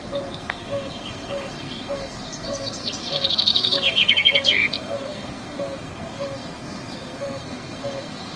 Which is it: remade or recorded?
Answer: remade